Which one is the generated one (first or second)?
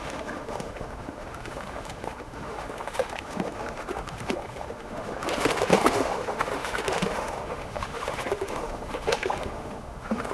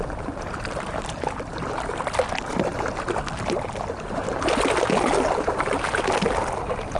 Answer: first